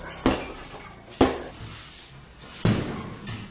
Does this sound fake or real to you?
real